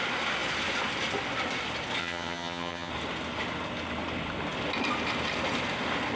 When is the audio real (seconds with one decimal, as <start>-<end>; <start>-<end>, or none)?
0.0-2.0; 2.9-6.2